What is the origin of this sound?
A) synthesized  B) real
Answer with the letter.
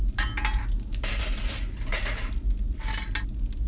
B